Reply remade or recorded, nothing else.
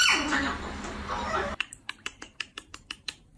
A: remade